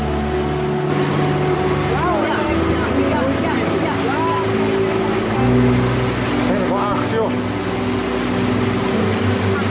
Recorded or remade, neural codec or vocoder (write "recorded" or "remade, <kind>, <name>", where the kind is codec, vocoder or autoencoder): recorded